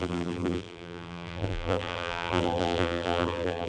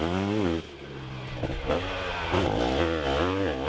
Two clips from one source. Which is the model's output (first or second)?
first